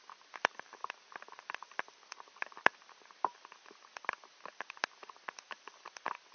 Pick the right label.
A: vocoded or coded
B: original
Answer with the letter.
B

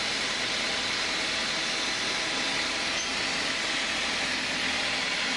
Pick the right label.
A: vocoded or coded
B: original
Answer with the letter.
B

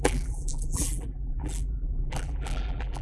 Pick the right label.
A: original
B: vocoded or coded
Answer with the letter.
B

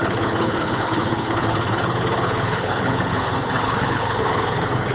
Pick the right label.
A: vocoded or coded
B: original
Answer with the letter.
A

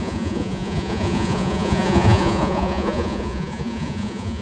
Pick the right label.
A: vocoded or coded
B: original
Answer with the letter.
A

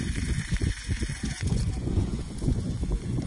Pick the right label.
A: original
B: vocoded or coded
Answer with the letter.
B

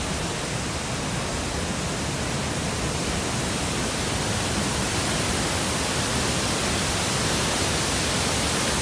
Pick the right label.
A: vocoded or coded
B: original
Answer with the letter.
B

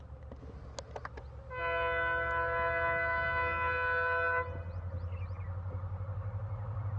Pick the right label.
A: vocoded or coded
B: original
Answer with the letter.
B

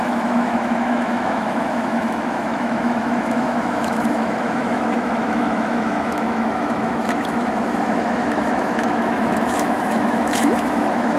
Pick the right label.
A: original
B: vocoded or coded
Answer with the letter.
B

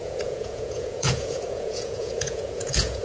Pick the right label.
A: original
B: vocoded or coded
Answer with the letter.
B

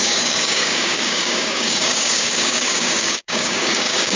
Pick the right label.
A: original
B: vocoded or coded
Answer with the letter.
B